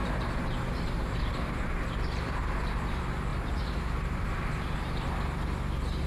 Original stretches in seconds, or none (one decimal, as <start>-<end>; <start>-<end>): 2.4-3.3; 4.4-6.1